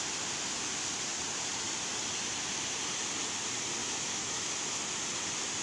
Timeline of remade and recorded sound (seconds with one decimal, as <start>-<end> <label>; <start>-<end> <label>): 0.0-3.8 recorded; 3.8-4.5 remade; 4.5-5.6 recorded